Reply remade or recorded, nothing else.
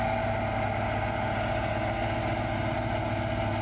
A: recorded